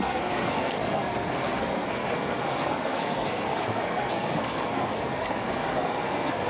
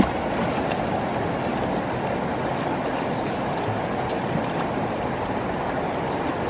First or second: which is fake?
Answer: first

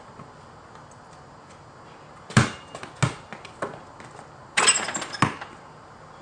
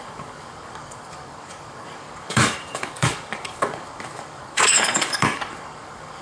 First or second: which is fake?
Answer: second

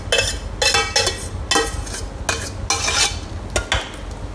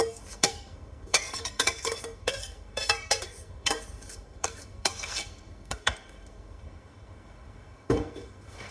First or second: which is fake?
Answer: second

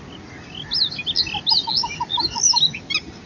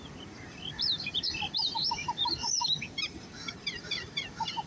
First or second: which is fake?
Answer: second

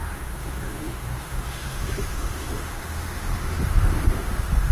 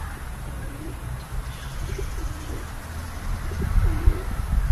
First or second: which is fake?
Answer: first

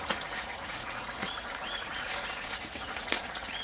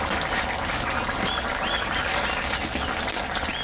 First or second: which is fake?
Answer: first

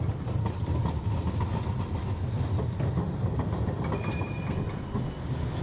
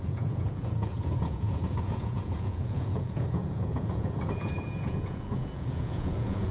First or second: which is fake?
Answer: second